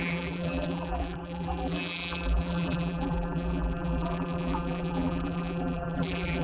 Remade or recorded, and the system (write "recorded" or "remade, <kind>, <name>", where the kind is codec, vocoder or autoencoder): remade, vocoder, BigVGAN v2